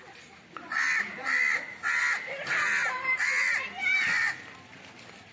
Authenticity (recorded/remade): recorded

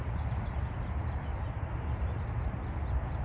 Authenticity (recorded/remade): recorded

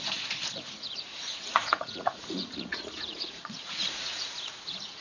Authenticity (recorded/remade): remade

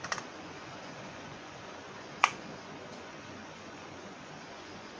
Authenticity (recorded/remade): remade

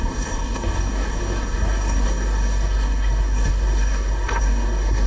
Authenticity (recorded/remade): remade